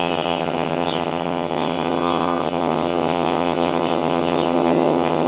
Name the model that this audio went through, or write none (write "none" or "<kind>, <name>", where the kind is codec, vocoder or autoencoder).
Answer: vocoder, HiFi-GAN